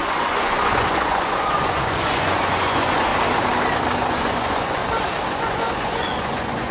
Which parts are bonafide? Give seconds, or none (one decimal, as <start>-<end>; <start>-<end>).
3.1-4.1; 4.8-5.3